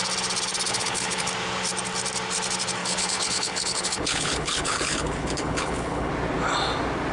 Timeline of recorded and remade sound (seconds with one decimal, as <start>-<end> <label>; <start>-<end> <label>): 0.0-0.7 recorded; 0.7-1.3 remade; 1.3-2.8 recorded; 2.8-6.1 remade; 6.1-7.1 recorded